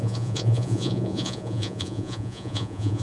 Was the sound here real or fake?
fake